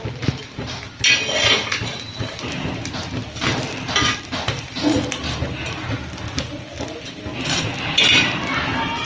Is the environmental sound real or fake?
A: real